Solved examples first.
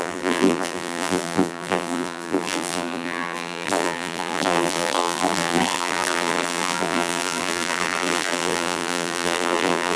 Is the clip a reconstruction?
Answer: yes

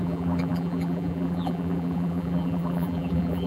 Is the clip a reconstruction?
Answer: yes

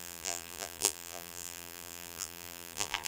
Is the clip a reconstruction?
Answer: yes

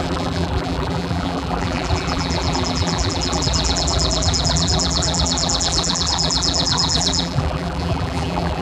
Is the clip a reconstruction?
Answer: yes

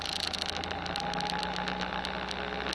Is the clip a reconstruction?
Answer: no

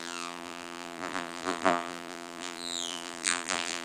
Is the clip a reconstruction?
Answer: yes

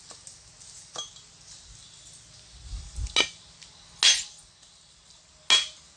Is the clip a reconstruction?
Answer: no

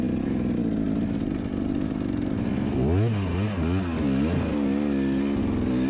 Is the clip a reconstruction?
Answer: no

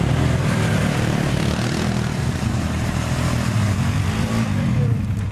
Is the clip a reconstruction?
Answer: yes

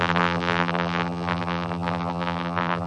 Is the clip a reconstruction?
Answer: yes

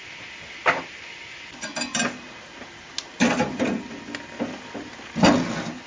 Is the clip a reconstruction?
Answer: no